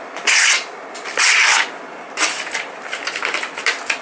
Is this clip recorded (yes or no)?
yes